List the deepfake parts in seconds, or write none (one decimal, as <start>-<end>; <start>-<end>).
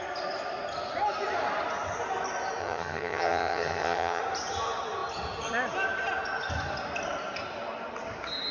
2.6-4.2